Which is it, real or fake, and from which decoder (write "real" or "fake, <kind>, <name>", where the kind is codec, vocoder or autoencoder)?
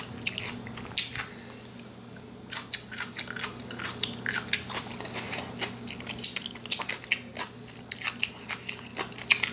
real